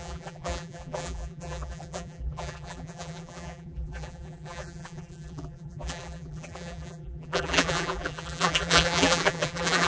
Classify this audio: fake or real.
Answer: fake